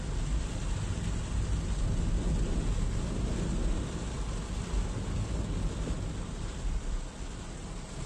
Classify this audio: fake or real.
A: real